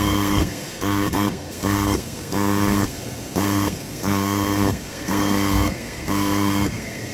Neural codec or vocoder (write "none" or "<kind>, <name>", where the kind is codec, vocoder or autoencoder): codec, SNAC